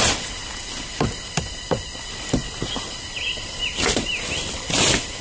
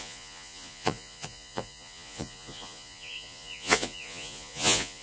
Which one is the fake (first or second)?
second